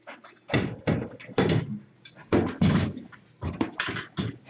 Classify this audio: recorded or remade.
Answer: recorded